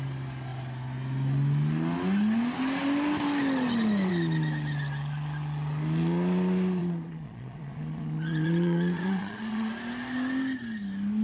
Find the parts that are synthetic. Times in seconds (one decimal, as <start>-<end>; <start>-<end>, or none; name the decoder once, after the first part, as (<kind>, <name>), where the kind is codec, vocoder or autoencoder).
6.8-9.7 (vocoder, Vocos)

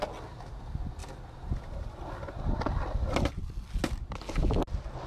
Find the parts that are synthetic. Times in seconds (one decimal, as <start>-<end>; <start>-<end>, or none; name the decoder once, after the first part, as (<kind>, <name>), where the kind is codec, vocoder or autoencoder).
none

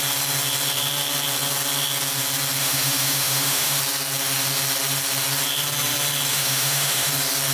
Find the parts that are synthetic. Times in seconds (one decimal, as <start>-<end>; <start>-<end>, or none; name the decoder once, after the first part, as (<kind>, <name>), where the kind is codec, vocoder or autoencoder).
2.6-3.8 (autoencoder, DAC-VAE); 6.3-7.1

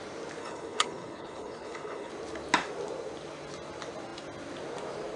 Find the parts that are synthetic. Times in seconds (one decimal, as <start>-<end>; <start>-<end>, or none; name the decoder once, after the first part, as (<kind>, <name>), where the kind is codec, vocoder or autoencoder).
0.4-2.1 (codec, HILCodec)

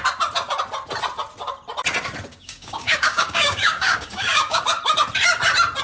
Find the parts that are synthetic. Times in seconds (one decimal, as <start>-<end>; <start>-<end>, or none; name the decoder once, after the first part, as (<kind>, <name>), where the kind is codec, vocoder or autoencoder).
2.3-4.6 (codec, DAC)